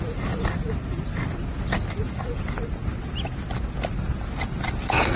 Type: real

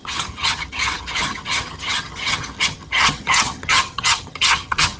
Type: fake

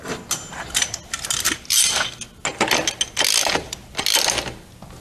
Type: real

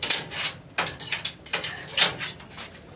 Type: real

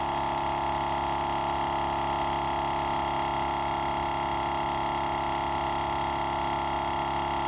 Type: real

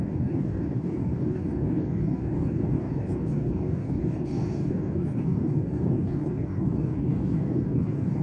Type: fake